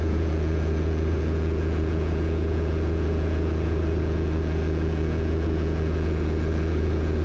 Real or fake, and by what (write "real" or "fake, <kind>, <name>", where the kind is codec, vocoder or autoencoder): fake, vocoder, Vocos